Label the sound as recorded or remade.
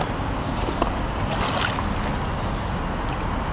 recorded